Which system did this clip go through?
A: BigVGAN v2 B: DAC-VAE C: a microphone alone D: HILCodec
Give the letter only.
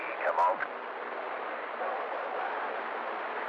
C